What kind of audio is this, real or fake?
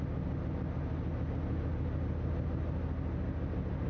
real